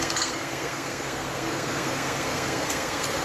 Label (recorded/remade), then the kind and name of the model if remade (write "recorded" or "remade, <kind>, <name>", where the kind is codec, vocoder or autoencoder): remade, codec, SNAC